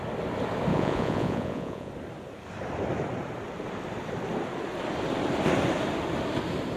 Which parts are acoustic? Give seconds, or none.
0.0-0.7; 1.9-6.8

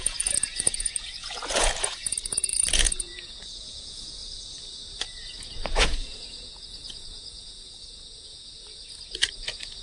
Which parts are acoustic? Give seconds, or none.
4.2-5.0

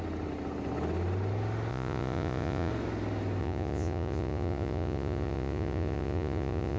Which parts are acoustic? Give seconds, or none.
0.0-1.7; 2.7-3.4

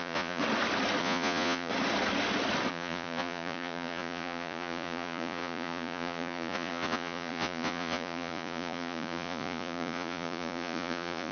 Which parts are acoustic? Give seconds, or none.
0.4-1.0; 1.7-2.7

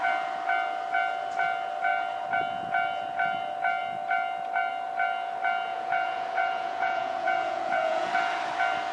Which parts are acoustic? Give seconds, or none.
0.0-5.7; 8.1-8.9

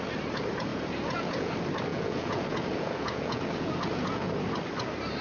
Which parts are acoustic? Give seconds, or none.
0.0-0.7; 1.5-1.9; 4.3-5.2

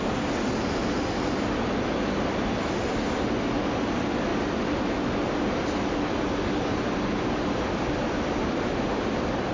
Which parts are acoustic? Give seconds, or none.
0.0-9.5